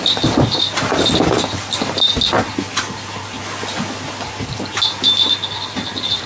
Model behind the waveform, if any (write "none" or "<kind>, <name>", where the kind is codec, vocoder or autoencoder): none